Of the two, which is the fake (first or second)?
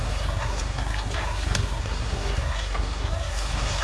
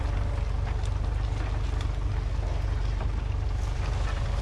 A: first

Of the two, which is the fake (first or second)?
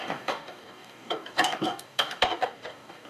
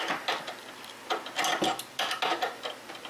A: first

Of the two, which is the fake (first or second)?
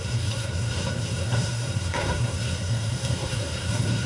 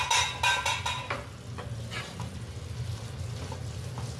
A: first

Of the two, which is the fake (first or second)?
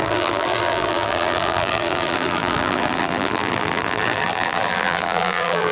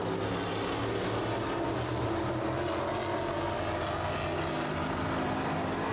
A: first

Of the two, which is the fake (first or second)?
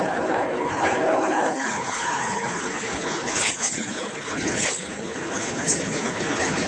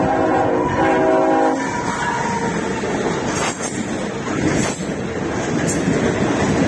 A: first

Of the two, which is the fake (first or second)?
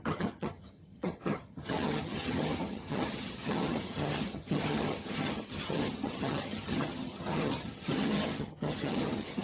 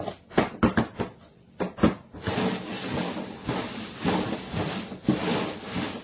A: first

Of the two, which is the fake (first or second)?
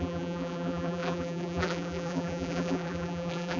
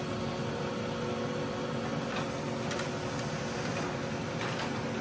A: first